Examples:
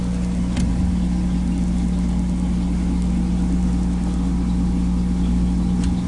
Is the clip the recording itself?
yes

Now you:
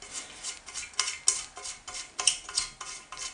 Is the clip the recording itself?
yes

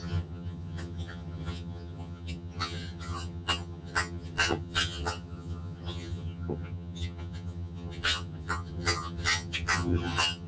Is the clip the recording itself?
no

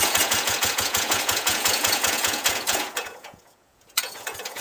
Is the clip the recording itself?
no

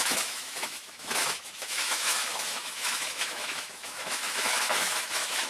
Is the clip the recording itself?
no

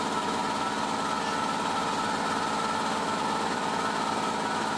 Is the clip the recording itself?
yes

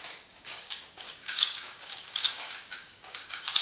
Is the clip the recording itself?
no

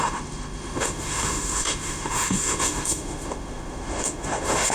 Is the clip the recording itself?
no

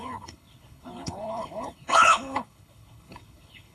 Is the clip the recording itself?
no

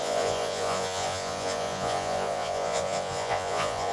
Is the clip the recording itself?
no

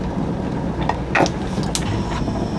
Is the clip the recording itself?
yes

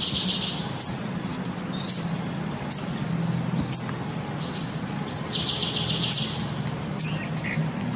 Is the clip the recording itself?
yes